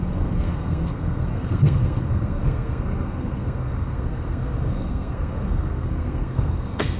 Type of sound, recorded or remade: remade